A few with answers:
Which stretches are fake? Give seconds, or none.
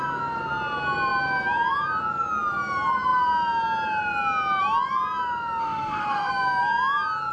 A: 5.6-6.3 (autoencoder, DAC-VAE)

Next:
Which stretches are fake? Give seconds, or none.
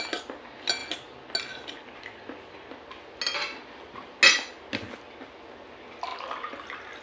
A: none